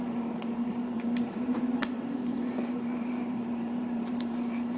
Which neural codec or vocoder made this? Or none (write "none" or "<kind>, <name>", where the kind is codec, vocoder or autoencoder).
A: vocoder, BigVGAN v2